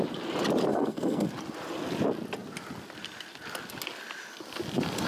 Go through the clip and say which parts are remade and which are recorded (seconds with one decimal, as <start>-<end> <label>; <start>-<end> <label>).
0.0-0.7 recorded; 0.7-1.3 remade; 1.3-5.1 recorded